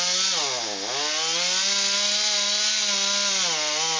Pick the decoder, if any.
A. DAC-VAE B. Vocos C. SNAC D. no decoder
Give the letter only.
D